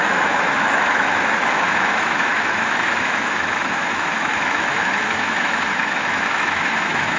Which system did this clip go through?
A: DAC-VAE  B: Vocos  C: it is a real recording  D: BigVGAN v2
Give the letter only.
A